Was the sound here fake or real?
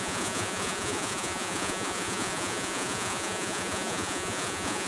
fake